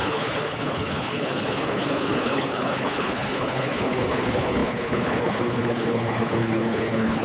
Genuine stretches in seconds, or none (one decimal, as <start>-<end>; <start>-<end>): none